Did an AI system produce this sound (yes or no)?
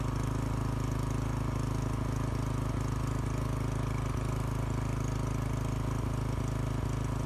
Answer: no